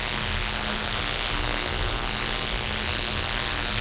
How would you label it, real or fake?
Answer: fake